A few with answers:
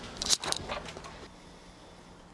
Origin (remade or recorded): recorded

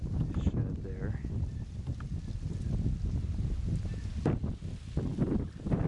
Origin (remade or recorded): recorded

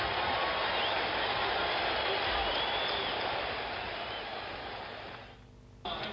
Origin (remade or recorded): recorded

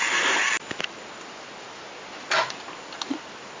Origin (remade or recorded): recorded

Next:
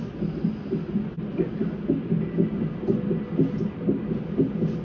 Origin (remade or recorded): recorded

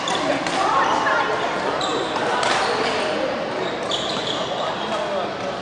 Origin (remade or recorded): recorded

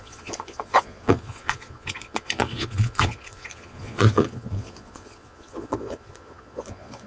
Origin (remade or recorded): remade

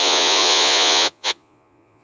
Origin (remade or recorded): remade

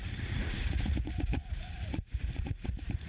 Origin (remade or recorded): remade